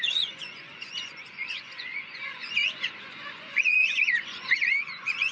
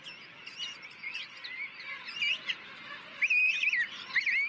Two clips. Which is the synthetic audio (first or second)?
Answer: first